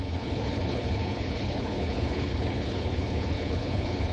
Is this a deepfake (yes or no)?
yes